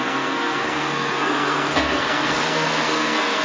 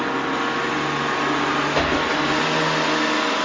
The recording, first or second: second